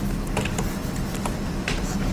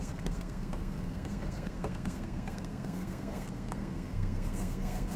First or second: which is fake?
second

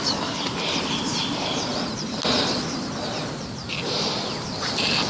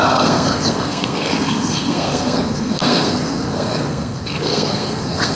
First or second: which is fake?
second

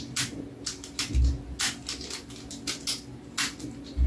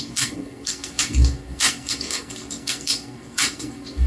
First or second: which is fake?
second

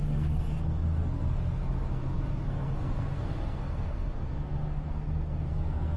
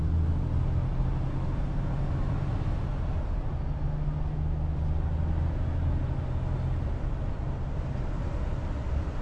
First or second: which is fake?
first